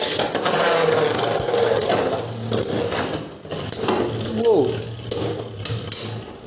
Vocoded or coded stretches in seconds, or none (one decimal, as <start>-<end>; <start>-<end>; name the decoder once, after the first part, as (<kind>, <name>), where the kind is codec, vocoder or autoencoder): 1.2-1.9 (codec, SNAC)